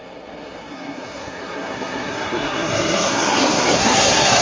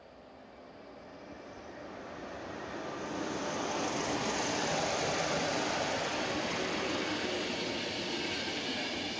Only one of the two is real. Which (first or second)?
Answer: second